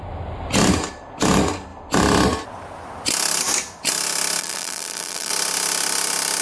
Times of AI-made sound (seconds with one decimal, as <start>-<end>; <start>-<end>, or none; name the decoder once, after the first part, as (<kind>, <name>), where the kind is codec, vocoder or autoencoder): 4.4-5.3 (vocoder, BigVGAN v2)